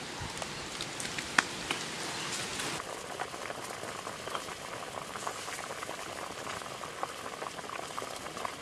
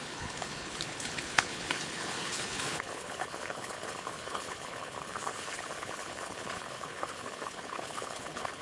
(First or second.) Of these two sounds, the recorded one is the first